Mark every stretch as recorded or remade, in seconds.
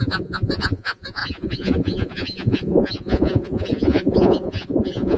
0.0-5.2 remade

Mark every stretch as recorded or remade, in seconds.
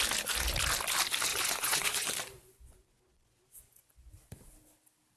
0.0-1.3 recorded; 1.3-4.1 remade; 4.1-5.2 recorded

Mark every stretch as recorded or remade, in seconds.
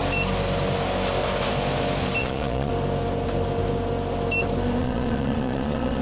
0.0-2.2 recorded; 2.2-2.7 remade; 2.7-4.8 recorded; 4.8-6.0 remade